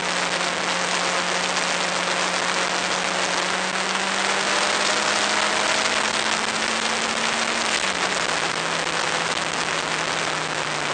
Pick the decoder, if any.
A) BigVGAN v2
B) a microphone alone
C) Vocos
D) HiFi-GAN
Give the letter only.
B